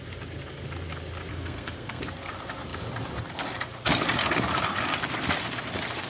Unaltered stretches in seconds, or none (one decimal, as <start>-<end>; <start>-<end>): 0.0-1.3; 2.0-6.1